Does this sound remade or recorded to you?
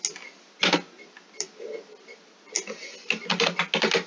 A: recorded